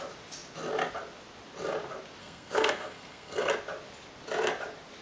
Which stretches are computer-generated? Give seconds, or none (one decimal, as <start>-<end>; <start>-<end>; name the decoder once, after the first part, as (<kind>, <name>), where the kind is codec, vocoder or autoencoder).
2.2-3.5 (codec, SNAC)